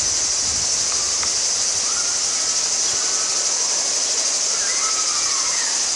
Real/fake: real